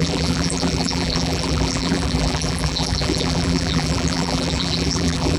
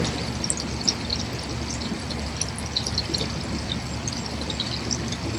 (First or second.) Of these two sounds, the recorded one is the second